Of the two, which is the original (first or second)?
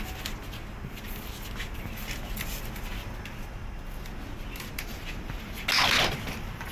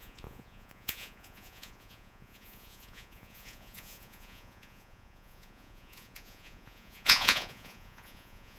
first